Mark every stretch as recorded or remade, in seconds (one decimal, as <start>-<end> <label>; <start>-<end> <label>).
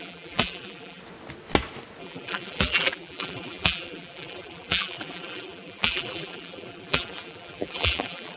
0.0-1.0 remade; 1.0-2.0 recorded; 2.0-8.4 remade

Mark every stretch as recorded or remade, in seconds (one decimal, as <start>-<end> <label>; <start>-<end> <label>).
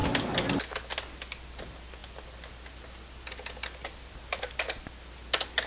0.0-5.7 recorded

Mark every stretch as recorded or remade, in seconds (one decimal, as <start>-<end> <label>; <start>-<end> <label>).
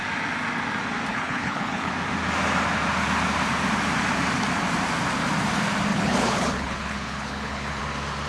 0.0-1.1 recorded; 1.1-1.9 remade; 1.9-5.9 recorded; 5.9-7.8 remade; 7.8-8.3 recorded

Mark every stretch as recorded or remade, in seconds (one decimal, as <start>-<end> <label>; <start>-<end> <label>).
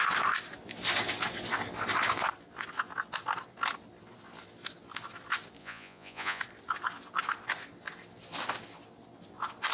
0.0-5.6 recorded; 5.6-6.4 remade; 6.4-9.7 recorded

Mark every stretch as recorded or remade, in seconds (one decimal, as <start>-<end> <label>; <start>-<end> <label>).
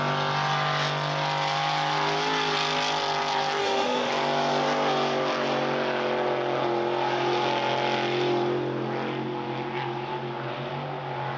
0.0-3.6 recorded; 3.6-4.1 remade; 4.1-11.4 recorded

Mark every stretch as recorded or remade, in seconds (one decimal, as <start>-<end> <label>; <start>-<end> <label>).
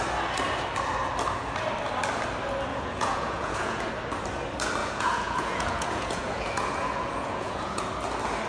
0.0-2.7 recorded; 2.7-3.8 remade; 3.8-4.8 recorded; 4.8-7.8 remade; 7.8-8.5 recorded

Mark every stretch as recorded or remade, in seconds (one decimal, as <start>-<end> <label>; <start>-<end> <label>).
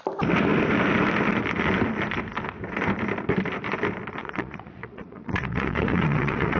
0.0-4.2 recorded; 4.2-6.6 remade